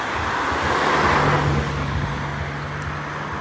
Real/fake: real